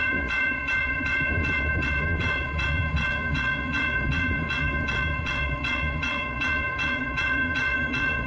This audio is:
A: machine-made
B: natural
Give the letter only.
A